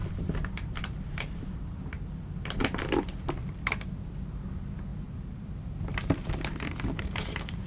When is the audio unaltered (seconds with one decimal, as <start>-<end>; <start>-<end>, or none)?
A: 4.1-4.9; 7.0-7.7